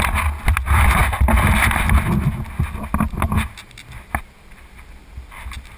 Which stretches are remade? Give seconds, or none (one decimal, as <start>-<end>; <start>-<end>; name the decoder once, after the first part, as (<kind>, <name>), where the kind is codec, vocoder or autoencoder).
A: none